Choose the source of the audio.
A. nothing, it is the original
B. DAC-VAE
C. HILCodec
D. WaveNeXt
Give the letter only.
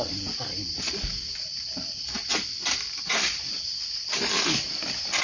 A